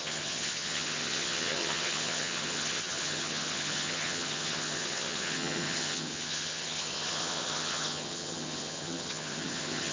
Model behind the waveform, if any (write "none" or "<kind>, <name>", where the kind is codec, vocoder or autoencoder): vocoder, HiFi-GAN